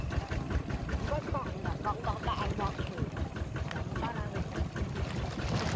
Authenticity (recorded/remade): recorded